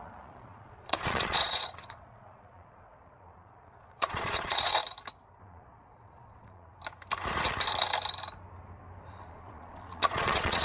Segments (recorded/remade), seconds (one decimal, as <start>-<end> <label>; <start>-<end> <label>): 0.0-4.8 remade; 4.8-5.4 recorded; 5.4-6.7 remade; 6.7-9.1 recorded; 9.1-10.6 remade